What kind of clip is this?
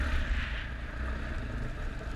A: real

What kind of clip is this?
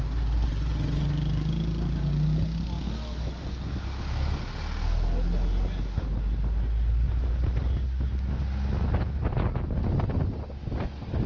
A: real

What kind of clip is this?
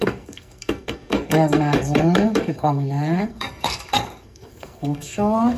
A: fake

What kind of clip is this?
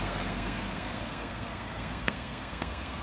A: fake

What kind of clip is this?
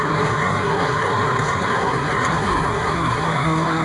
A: fake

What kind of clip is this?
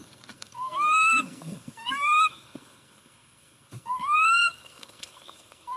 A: fake